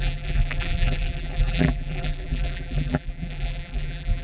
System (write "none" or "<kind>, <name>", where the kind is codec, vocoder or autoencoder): vocoder, BigVGAN v2